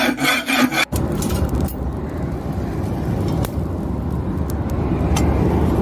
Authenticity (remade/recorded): remade